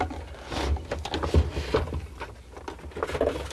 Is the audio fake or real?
real